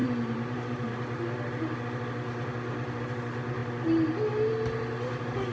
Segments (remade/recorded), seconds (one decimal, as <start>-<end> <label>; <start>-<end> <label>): 0.0-5.5 recorded